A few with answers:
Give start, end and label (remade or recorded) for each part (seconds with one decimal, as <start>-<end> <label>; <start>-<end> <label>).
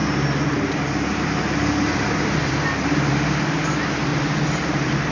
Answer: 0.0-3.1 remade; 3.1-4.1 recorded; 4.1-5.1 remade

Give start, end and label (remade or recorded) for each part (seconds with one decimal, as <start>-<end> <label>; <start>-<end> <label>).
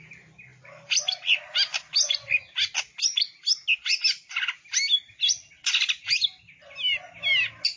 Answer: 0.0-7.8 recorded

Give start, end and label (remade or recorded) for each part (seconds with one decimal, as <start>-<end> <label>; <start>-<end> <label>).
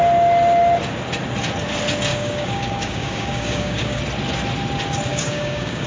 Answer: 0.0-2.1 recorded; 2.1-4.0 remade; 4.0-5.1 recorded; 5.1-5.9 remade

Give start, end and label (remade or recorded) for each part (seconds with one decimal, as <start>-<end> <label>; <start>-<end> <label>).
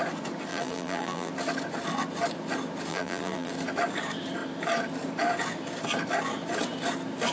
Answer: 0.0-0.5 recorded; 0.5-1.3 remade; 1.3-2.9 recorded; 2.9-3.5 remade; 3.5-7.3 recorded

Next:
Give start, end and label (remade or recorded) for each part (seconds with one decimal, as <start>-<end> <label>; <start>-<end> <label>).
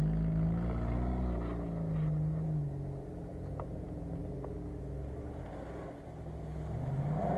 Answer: 0.0-3.3 recorded; 3.3-4.2 remade; 4.2-7.4 recorded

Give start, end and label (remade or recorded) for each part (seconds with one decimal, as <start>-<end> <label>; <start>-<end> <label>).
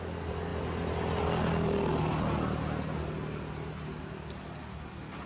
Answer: 0.0-5.3 recorded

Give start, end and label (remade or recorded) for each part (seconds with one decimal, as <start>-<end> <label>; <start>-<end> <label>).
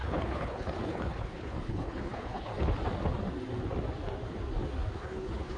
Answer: 0.0-2.5 remade; 2.5-4.9 recorded; 4.9-5.6 remade